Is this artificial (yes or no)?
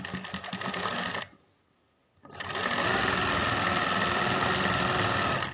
no